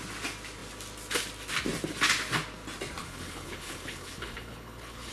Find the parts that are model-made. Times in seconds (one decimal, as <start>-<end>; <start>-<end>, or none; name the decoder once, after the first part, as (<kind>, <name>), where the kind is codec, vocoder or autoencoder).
3.0-5.1 (codec, HILCodec)